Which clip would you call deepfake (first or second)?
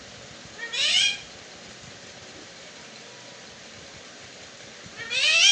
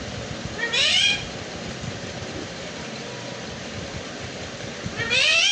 second